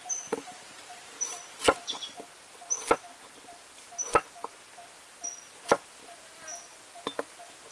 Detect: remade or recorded recorded